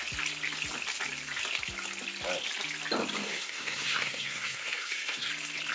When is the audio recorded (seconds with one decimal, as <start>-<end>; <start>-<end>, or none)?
0.0-3.2; 5.3-5.7